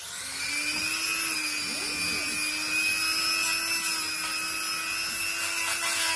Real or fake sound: real